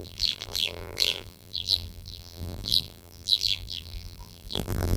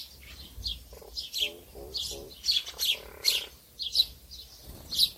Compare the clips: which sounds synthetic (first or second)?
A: first